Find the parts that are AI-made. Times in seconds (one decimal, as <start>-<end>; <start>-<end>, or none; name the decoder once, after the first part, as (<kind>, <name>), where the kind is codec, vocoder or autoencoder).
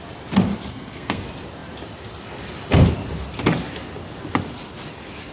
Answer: 0.7-1.2 (codec, SNAC)